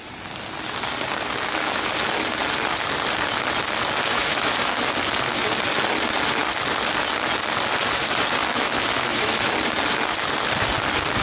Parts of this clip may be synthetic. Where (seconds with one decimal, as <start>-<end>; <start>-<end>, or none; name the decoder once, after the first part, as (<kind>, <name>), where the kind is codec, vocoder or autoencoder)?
4.1-4.7 (autoencoder, DAC-VAE); 8.4-9.5